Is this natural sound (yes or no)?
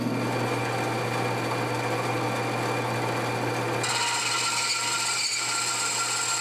yes